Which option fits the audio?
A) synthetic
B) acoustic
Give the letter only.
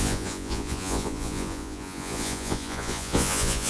A